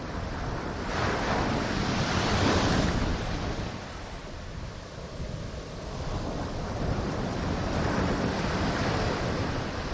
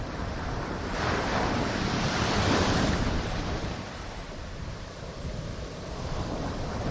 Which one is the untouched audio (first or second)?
first